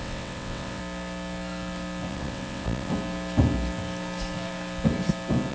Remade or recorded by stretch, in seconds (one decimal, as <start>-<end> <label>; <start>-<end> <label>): 0.0-0.8 remade; 0.8-2.1 recorded; 2.1-2.9 remade; 2.9-5.5 recorded